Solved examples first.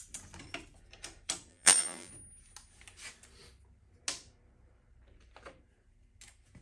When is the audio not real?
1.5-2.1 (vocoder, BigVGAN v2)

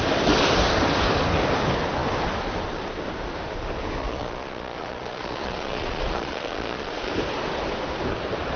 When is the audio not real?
4.0-7.1 (vocoder, Vocos)